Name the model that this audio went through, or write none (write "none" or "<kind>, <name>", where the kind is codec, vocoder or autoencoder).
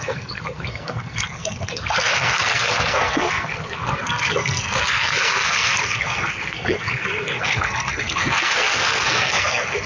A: codec, SNAC